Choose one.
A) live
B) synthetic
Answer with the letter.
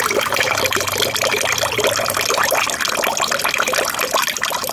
A